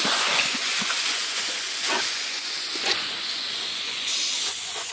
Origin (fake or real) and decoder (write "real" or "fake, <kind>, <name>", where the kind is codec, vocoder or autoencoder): fake, vocoder, Vocos